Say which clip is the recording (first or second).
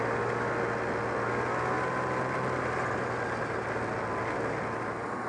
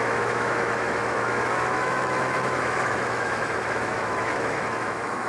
first